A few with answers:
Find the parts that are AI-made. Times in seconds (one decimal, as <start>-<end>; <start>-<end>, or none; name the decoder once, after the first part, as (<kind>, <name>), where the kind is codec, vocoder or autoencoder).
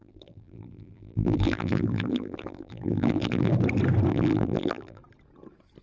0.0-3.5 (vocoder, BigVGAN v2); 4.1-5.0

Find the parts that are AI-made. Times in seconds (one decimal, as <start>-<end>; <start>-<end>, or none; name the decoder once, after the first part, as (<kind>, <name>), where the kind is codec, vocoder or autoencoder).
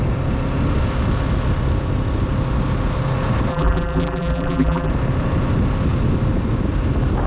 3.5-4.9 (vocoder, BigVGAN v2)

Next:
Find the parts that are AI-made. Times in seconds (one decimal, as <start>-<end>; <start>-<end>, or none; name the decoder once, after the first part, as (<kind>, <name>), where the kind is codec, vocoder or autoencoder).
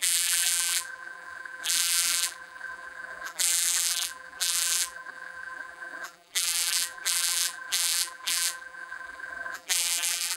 0.0-10.4 (vocoder, BigVGAN v2)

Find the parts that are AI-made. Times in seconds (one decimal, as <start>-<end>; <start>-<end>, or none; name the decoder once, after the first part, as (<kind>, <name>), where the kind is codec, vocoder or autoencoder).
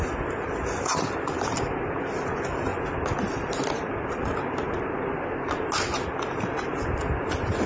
none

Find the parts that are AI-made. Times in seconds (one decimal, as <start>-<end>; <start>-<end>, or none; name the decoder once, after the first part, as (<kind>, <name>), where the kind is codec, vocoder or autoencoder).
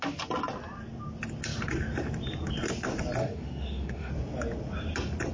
3.2-4.1 (autoencoder, DAC-VAE)